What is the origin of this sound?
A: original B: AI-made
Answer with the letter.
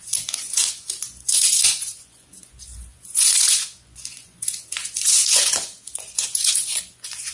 B